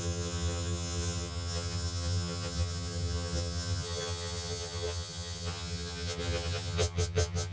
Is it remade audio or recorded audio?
remade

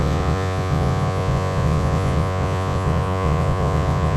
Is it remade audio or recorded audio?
remade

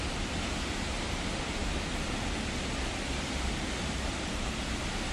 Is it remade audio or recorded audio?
recorded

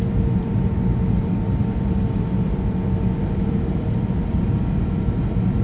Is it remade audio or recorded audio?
remade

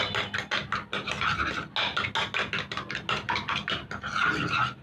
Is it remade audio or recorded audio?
recorded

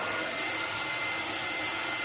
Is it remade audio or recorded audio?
recorded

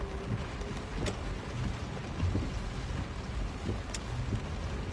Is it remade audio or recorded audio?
recorded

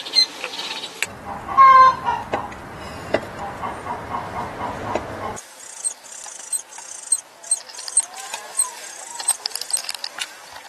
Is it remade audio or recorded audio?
recorded